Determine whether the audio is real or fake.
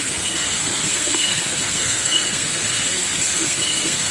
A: fake